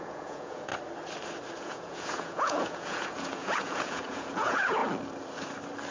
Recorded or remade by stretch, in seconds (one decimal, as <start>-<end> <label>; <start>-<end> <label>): 0.0-0.7 remade; 0.7-1.6 recorded; 1.6-4.8 remade; 4.8-5.9 recorded